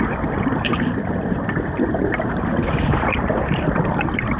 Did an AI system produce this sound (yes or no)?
yes